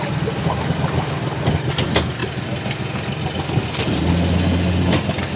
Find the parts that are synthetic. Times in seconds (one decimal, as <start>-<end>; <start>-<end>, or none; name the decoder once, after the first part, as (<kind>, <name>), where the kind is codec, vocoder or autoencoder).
none